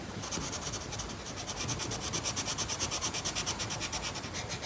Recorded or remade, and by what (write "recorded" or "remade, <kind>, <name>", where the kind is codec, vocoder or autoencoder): recorded